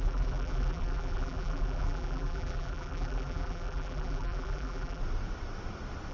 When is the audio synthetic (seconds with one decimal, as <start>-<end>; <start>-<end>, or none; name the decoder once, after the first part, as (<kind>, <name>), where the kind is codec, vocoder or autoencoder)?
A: 0.0-5.0 (vocoder, BigVGAN v2)